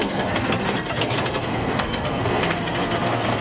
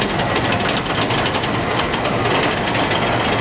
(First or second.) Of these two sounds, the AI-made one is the first